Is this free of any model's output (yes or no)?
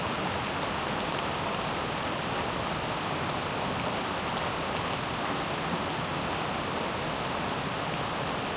yes